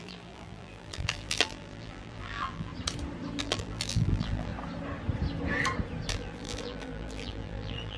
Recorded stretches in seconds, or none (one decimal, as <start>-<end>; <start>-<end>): 2.7-3.4; 4.5-6.1